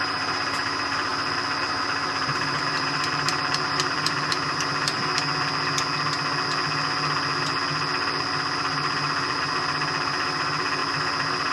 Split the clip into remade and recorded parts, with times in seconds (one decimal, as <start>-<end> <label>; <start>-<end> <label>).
0.0-1.1 remade; 1.1-1.6 recorded; 1.6-5.0 remade; 5.0-8.5 recorded; 8.5-10.8 remade; 10.8-11.5 recorded